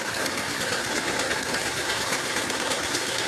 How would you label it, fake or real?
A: fake